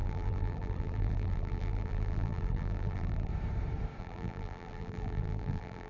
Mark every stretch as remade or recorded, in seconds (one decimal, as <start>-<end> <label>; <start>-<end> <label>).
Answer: 0.0-3.3 remade; 3.3-4.0 recorded; 4.0-5.9 remade